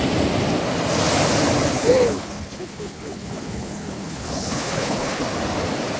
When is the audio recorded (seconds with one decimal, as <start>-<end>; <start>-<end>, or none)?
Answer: 0.0-1.7; 5.2-6.0

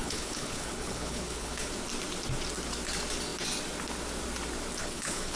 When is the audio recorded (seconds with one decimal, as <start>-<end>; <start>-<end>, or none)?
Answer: 1.7-4.8